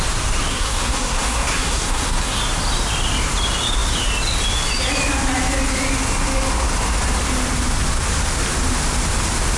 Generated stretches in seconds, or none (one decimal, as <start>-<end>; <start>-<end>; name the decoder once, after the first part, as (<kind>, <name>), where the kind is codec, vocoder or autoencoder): 0.5-2.4 (codec, SNAC)